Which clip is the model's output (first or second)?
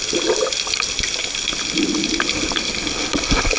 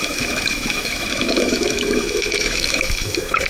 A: second